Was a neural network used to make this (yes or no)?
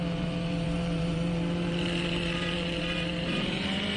yes